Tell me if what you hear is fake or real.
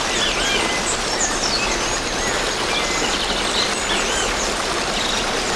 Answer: real